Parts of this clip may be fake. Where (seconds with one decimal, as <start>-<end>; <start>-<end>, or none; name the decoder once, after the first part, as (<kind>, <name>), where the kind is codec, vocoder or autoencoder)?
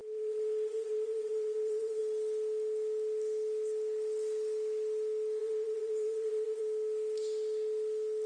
0.0-2.0 (vocoder, WaveNeXt); 5.4-6.6